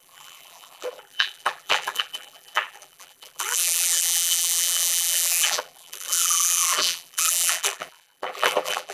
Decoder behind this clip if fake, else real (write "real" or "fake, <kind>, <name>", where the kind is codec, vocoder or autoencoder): fake, vocoder, BigVGAN v2